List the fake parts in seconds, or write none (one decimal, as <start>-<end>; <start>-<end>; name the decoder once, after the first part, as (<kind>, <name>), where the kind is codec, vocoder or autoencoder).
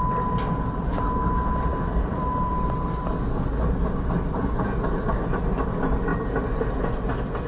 1.7-2.5 (vocoder, BigVGAN v2)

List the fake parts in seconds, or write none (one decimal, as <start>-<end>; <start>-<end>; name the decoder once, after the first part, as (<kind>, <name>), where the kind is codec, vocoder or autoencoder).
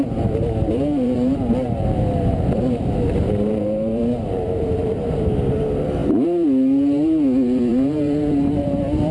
0.0-9.1 (vocoder, BigVGAN v2)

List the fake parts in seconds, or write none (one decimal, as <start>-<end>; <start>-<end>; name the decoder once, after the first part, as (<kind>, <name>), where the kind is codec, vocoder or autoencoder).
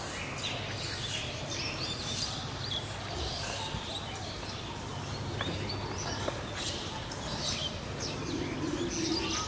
1.2-4.4 (vocoder, BigVGAN v2); 4.9-5.7; 7.6-8.2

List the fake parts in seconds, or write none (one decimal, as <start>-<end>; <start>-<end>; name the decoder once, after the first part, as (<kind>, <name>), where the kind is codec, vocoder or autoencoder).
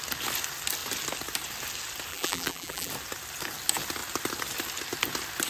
2.1-2.9 (vocoder, BigVGAN v2)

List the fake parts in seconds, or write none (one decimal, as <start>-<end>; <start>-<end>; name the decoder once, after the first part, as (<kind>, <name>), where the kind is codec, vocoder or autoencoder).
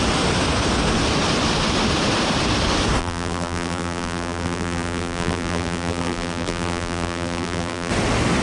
3.0-7.9 (vocoder, BigVGAN v2)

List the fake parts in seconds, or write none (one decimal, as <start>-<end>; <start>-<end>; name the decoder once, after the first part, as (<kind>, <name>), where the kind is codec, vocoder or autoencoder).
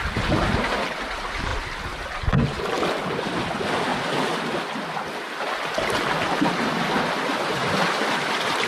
3.9-4.6 (vocoder, BigVGAN v2)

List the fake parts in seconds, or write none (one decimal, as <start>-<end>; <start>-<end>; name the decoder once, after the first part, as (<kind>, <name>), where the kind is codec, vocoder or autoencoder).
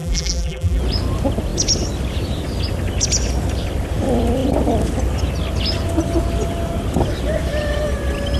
0.0-0.8 (vocoder, BigVGAN v2)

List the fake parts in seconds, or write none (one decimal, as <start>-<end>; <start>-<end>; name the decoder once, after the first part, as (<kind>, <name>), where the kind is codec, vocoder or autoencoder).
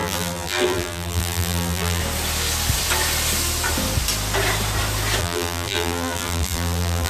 0.0-2.0 (vocoder, BigVGAN v2); 5.2-7.1